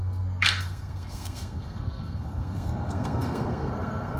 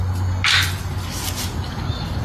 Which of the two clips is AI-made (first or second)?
first